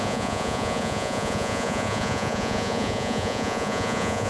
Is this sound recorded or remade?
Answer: remade